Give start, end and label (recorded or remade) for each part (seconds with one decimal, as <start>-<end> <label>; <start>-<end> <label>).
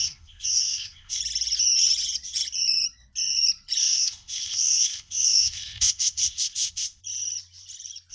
0.0-1.2 remade; 1.2-3.8 recorded; 3.8-7.0 remade; 7.0-8.1 recorded